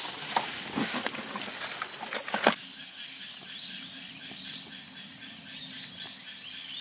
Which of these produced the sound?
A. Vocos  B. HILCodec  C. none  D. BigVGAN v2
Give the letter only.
C